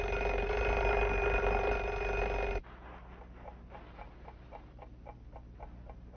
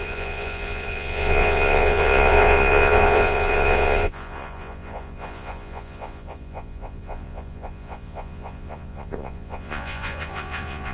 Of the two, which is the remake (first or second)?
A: second